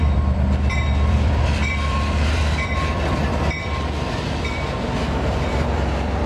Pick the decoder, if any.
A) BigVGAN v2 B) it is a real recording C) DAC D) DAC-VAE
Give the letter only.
A